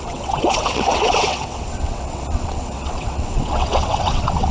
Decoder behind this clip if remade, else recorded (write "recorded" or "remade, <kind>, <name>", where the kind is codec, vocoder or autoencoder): remade, vocoder, WaveNeXt